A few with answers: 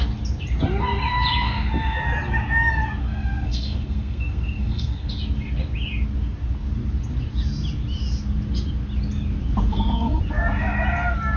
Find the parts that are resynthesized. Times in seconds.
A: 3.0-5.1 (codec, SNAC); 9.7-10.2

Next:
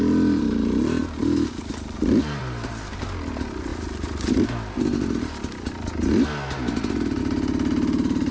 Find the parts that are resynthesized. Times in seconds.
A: none